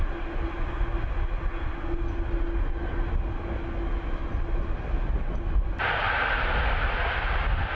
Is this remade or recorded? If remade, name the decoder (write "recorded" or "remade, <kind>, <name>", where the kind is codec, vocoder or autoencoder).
recorded